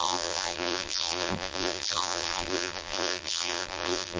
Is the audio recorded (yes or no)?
no